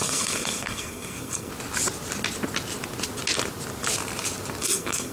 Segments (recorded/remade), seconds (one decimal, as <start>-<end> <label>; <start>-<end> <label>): 0.0-1.5 remade; 1.5-4.6 recorded; 4.6-5.1 remade